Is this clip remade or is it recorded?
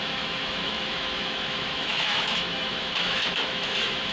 remade